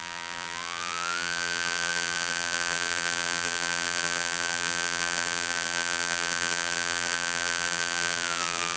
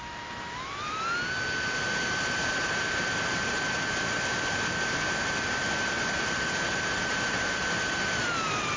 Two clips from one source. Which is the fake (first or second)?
first